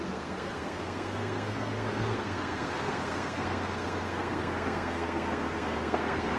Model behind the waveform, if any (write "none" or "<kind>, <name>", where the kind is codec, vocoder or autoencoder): codec, SNAC